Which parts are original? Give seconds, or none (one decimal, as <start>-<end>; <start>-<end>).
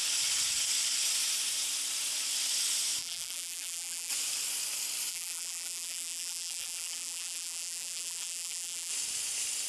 0.0-3.0; 4.1-5.1; 8.9-9.7